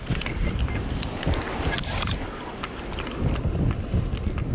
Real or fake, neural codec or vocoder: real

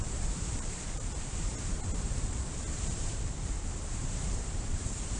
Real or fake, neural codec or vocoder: fake, vocoder, BigVGAN v2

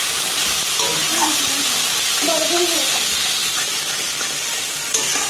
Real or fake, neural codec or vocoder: real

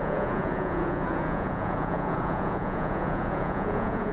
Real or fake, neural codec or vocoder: fake, vocoder, Vocos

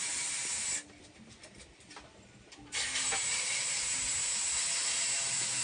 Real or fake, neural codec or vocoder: real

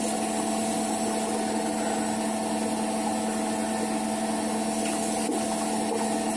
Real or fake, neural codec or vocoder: real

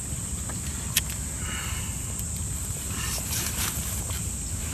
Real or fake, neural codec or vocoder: real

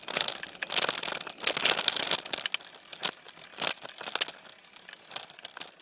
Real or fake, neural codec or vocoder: real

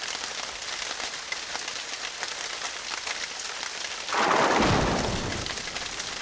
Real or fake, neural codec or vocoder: real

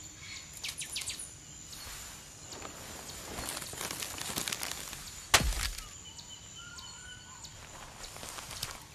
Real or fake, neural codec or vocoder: real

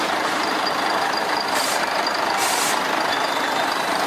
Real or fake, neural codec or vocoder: fake, vocoder, BigVGAN v2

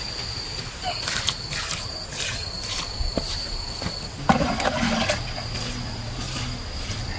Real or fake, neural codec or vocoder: real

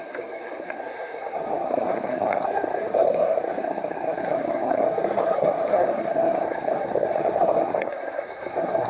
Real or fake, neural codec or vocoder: fake, codec, SNAC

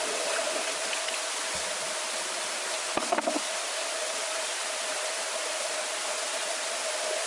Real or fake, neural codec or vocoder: real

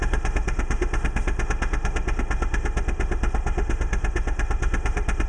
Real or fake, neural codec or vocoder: fake, autoencoder, DAC-VAE